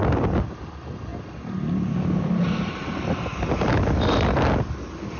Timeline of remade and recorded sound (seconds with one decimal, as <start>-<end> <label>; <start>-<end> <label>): 0.0-5.2 recorded